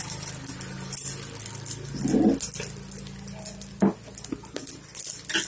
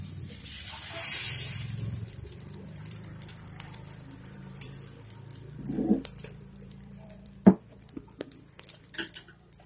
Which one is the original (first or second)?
first